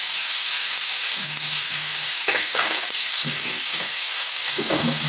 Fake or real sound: fake